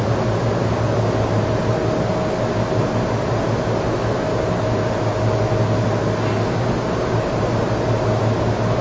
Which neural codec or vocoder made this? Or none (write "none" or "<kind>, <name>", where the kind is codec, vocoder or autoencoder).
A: none